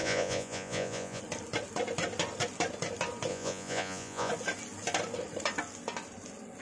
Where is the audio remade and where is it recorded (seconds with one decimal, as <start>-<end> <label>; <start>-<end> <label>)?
0.0-1.2 remade; 1.2-3.3 recorded; 3.3-4.3 remade; 4.3-6.6 recorded